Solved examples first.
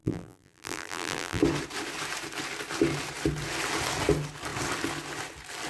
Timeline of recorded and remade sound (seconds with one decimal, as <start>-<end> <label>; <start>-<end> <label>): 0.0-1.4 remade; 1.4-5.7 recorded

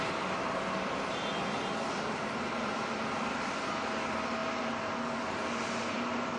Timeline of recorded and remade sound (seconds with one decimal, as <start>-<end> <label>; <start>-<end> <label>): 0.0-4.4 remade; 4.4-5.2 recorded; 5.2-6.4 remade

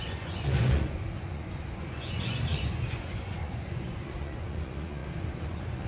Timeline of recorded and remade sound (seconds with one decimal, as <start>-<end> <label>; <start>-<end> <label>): 0.0-5.9 remade

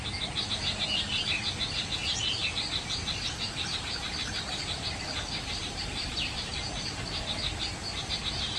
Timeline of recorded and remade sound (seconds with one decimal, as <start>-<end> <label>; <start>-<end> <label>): 0.0-2.0 recorded; 2.0-7.2 remade; 7.2-8.6 recorded